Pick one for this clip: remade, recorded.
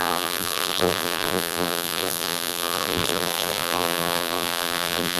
remade